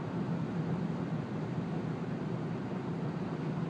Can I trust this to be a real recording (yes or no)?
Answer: yes